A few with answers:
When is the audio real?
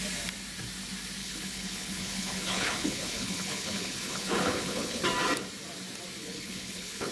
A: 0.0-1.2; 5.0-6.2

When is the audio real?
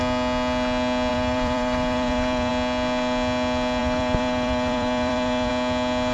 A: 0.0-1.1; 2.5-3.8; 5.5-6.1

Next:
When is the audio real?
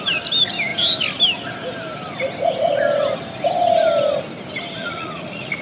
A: 0.0-4.8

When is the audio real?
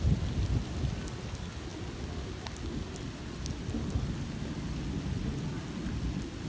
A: 0.0-6.5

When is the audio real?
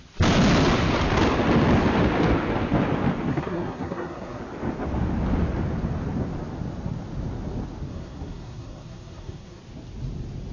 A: 0.0-3.3; 4.4-7.9; 9.6-10.5